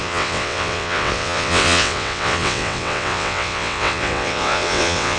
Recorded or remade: remade